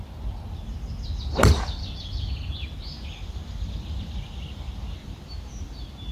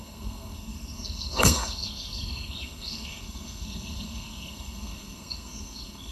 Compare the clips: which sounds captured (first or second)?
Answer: first